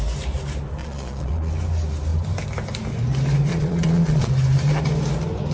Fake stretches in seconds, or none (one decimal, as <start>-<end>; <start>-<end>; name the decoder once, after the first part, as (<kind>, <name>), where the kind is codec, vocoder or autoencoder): 0.8-1.5 (vocoder, Vocos); 3.5-4.3